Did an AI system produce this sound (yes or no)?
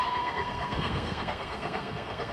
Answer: yes